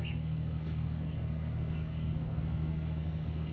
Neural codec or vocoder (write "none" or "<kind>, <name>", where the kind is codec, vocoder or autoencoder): codec, SNAC